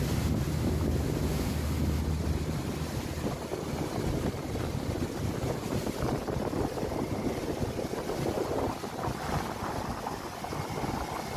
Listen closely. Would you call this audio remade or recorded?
recorded